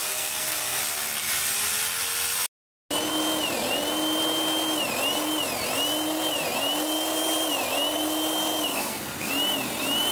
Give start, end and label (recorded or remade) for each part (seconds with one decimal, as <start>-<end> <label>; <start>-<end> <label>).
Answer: 0.0-0.8 remade; 0.8-8.7 recorded; 8.7-9.3 remade; 9.3-10.1 recorded